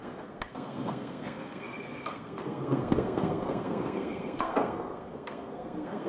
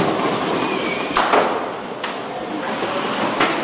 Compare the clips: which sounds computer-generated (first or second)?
first